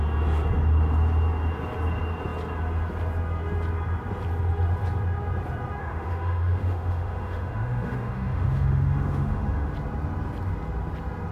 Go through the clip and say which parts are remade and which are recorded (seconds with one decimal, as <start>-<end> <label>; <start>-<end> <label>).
0.0-5.8 recorded; 5.8-9.7 remade; 9.7-11.3 recorded